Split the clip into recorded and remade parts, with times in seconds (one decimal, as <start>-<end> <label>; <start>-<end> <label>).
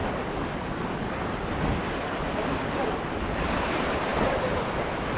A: 0.0-5.2 recorded